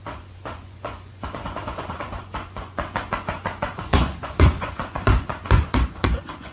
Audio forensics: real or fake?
fake